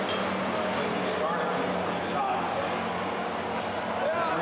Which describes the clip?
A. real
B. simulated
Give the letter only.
A